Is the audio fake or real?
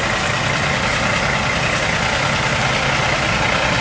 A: real